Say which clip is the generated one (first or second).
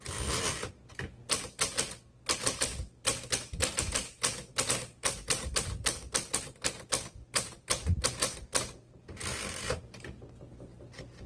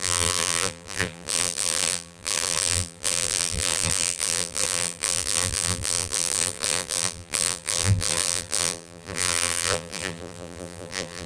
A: second